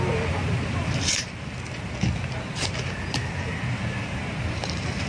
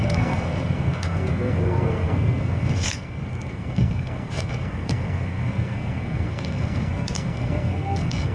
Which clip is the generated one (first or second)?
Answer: second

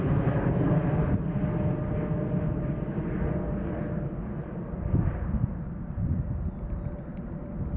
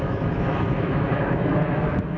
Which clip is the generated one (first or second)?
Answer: second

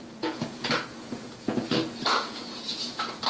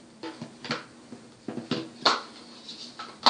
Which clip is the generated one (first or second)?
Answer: first